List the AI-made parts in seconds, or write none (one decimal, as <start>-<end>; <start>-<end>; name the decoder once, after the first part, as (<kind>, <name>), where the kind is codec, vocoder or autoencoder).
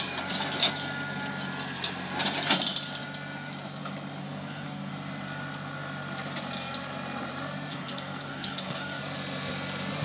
4.2-4.9 (codec, SNAC); 7.7-9.0